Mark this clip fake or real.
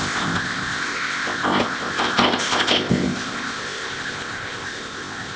fake